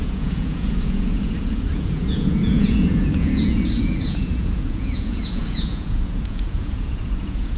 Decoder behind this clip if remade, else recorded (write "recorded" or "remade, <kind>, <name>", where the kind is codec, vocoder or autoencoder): remade, vocoder, Vocos